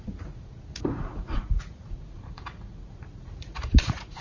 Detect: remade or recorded remade